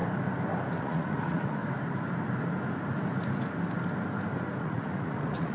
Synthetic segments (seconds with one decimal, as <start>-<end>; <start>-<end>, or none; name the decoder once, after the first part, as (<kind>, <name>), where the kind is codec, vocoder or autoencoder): 0.8-1.6 (vocoder, Vocos); 4.6-5.5